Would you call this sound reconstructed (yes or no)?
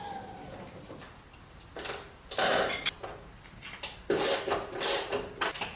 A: no